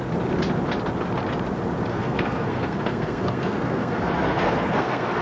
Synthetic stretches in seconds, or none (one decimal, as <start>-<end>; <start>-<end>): 1.9-5.2